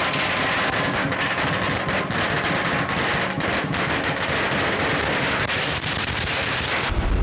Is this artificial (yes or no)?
no